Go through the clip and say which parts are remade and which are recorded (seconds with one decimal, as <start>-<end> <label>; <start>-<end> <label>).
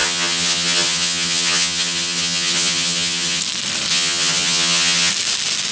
0.0-3.4 remade; 3.4-3.9 recorded; 3.9-5.1 remade; 5.1-5.7 recorded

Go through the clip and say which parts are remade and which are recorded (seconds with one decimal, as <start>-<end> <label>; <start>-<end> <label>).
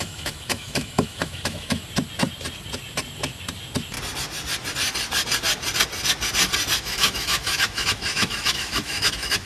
0.0-1.8 remade; 1.8-6.8 recorded; 6.8-9.5 remade